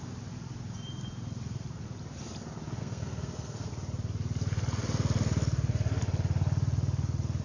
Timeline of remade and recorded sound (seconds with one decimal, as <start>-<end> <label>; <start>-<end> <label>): 0.0-2.8 recorded; 2.8-3.7 remade; 3.7-7.4 recorded